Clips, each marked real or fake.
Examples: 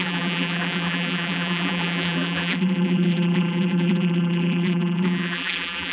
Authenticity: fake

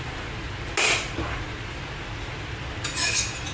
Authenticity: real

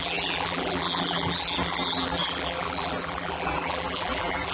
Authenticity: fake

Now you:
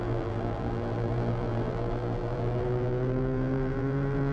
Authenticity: fake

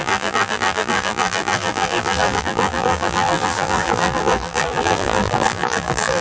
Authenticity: fake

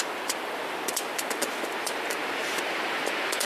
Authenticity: fake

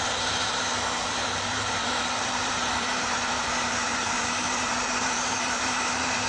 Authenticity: fake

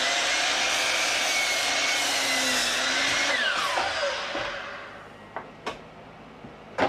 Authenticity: real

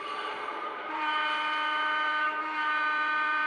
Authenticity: fake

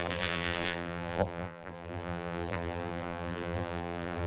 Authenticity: fake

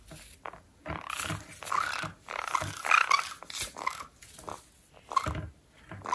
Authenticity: real